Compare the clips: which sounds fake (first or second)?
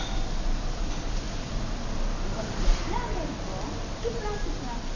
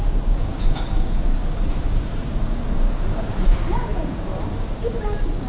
second